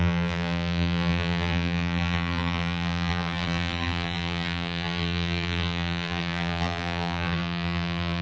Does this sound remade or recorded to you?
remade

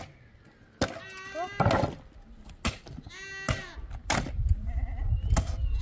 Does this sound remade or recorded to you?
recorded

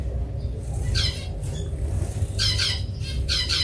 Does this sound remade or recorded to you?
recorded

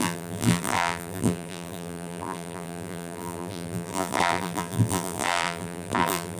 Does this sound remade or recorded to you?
remade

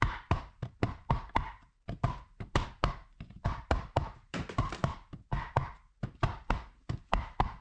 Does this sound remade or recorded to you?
remade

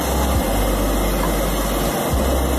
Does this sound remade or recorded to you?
recorded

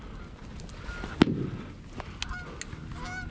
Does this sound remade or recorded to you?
recorded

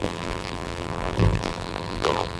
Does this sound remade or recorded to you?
remade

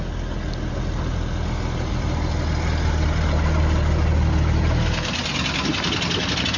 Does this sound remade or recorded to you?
recorded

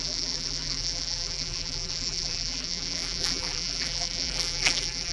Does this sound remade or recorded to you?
remade